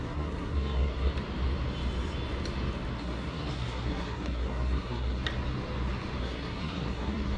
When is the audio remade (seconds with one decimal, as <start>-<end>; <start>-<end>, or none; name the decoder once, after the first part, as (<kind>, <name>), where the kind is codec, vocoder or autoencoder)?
0.0-1.1 (codec, SNAC); 3.0-5.2; 6.2-7.4